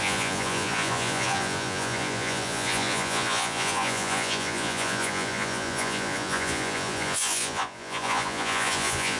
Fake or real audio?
fake